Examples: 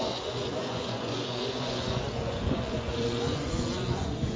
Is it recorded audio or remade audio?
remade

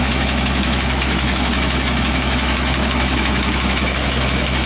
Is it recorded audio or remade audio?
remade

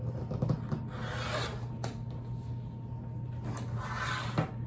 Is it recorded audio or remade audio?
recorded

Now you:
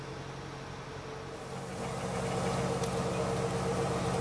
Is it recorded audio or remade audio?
recorded